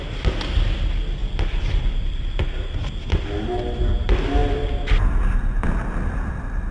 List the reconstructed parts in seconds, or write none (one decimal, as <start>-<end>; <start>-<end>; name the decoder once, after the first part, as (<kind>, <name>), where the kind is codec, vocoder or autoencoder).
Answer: none